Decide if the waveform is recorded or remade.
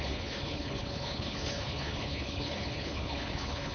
remade